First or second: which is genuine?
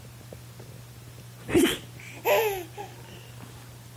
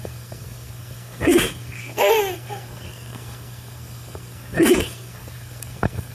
first